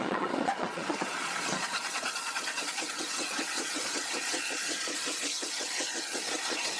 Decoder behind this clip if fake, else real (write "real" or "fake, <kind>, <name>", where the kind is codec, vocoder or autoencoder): fake, vocoder, Vocos